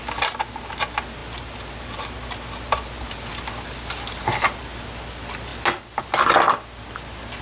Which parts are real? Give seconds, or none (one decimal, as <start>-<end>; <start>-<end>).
0.0-7.4

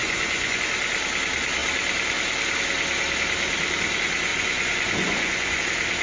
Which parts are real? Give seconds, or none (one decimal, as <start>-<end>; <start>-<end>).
0.6-4.3; 5.6-6.0

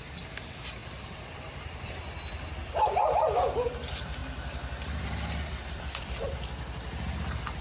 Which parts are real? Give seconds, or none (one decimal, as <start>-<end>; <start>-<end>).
0.0-7.6

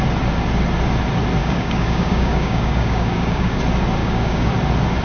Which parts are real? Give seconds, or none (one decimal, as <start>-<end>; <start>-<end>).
0.0-1.4; 3.6-4.0; 4.5-5.0

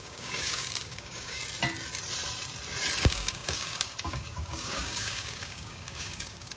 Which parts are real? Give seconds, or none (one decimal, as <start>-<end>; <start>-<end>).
1.4-3.0

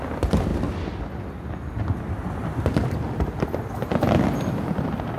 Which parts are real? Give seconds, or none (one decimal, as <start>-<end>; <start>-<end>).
0.0-5.2

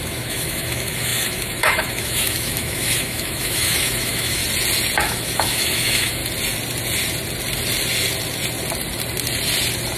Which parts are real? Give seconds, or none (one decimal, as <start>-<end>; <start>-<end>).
4.4-5.0; 6.2-10.0